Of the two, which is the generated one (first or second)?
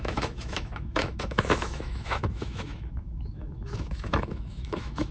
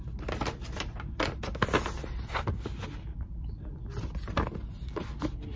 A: first